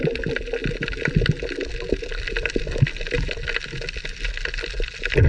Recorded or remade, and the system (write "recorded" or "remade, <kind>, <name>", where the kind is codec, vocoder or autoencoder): recorded